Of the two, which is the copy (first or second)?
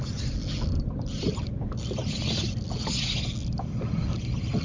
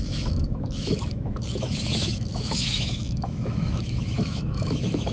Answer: second